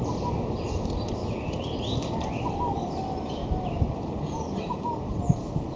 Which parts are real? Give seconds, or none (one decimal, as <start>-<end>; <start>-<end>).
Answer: 0.0-3.4